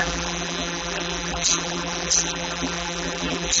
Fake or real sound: fake